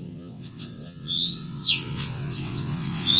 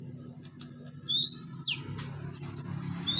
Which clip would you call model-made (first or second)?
first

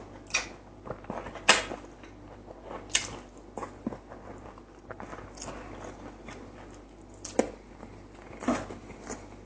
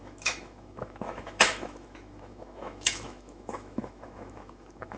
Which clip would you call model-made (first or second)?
second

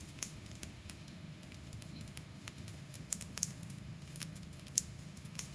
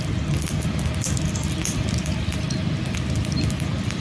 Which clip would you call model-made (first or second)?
first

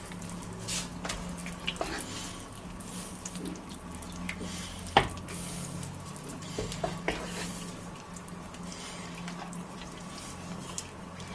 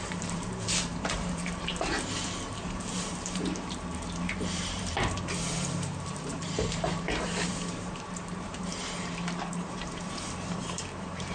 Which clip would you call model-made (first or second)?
second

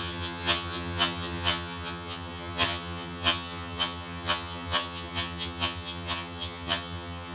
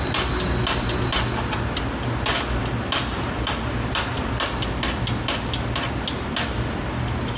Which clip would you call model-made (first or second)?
first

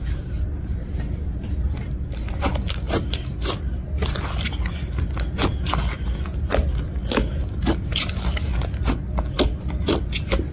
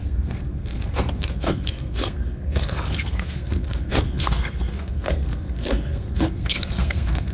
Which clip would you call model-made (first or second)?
second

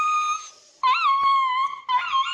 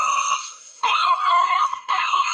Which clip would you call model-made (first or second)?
second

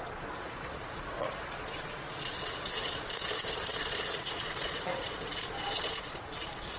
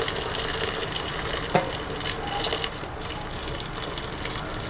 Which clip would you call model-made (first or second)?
first